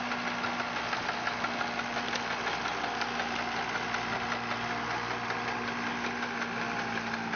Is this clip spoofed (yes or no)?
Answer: no